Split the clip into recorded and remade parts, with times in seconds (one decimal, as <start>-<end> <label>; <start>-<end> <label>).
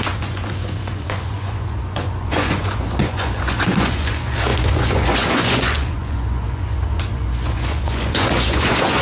0.0-9.0 remade